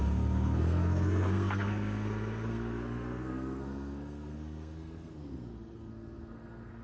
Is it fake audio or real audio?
fake